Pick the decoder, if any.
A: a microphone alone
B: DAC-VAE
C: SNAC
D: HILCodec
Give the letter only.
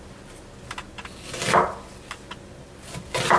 A